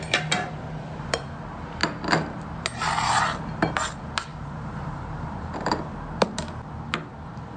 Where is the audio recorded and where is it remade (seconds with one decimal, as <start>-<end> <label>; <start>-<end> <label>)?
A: 0.0-4.3 recorded; 4.3-5.7 remade; 5.7-7.6 recorded